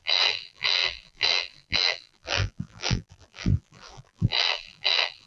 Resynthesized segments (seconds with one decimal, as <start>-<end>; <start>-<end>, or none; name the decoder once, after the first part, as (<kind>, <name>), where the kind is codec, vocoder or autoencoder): 0.0-5.3 (vocoder, BigVGAN v2)